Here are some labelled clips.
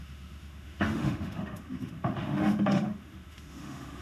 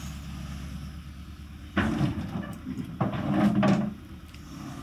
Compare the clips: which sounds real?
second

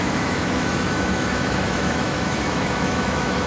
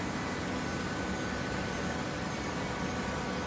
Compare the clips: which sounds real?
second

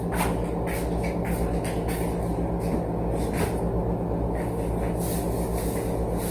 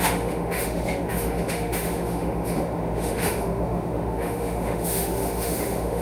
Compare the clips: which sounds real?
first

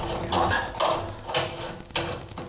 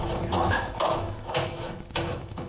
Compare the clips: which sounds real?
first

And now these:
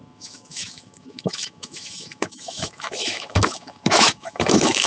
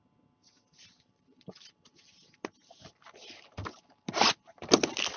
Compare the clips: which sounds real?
second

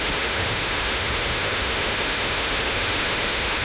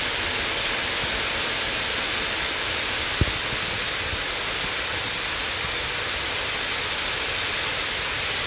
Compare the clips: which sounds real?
second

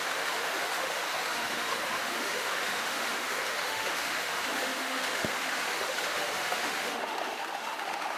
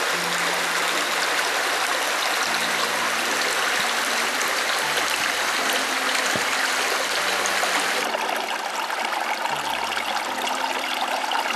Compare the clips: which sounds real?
second